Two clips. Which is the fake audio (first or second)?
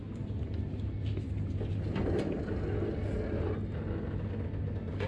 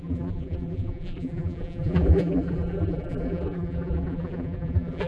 second